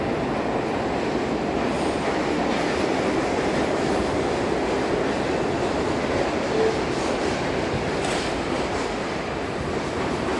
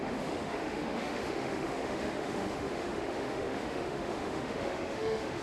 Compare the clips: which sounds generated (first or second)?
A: second